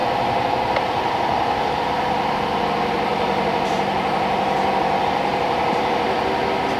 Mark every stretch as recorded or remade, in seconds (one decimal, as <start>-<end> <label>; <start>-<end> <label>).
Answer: 0.0-6.8 recorded